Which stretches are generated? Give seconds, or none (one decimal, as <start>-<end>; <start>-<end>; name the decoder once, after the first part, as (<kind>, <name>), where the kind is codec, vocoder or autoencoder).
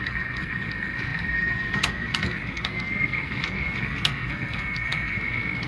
0.0-5.7 (codec, SNAC)